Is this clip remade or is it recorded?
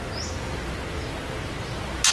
recorded